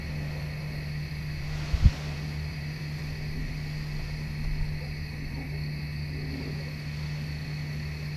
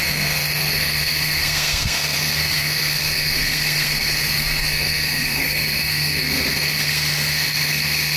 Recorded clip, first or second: first